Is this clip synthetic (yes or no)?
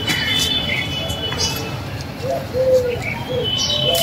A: no